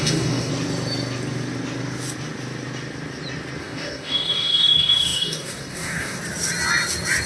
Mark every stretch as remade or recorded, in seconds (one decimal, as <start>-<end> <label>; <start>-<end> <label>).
0.0-0.5 remade; 0.5-3.6 recorded; 3.6-6.2 remade; 6.2-7.3 recorded